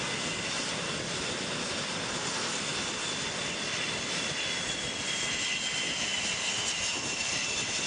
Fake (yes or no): no